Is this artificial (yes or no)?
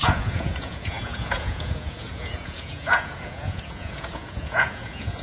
yes